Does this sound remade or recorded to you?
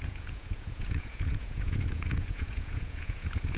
remade